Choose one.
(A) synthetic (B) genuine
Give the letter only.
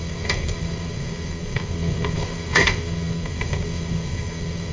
A